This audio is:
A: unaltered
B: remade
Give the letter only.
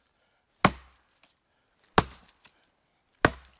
A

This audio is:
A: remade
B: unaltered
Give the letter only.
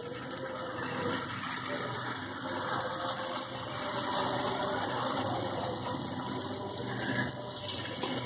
A